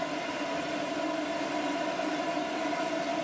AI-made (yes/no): no